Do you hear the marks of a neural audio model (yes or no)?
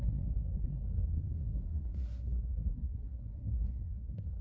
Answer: yes